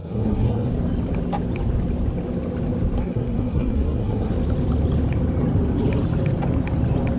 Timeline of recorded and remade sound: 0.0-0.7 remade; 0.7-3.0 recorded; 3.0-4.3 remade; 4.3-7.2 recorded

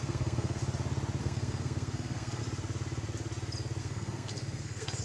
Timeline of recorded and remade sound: 0.0-0.6 remade; 0.6-1.2 recorded; 1.2-2.4 remade; 2.4-3.8 recorded; 3.8-5.0 remade

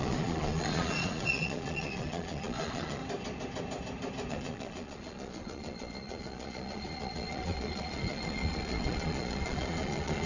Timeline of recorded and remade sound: 0.0-3.0 remade; 3.0-4.3 recorded; 4.3-10.3 remade

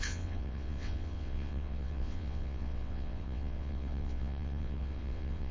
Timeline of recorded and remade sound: 0.0-5.5 remade

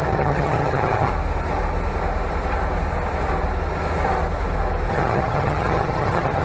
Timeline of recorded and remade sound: 0.0-1.1 remade; 1.1-4.9 recorded; 4.9-6.4 remade